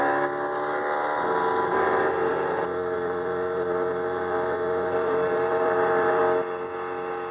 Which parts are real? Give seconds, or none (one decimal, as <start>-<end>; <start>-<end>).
0.0-2.3; 6.2-7.3